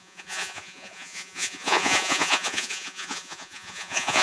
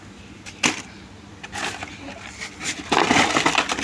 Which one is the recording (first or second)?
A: second